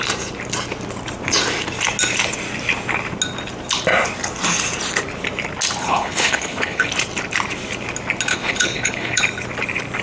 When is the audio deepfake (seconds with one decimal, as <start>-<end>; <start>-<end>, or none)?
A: 5.8-6.9; 8.3-9.2